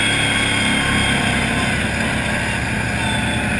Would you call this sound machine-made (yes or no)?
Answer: no